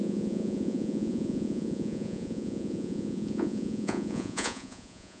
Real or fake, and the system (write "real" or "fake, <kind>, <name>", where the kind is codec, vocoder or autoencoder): fake, vocoder, Vocos